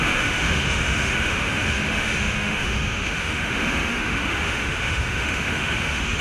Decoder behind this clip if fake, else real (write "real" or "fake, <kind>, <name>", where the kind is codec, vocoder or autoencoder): fake, autoencoder, DAC-VAE